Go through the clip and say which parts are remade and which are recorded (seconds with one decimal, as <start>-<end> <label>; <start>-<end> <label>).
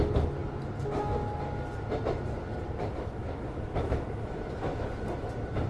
0.0-3.2 recorded; 3.2-4.9 remade; 4.9-5.7 recorded